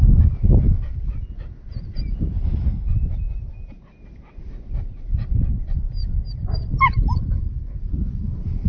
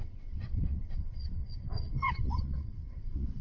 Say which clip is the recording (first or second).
first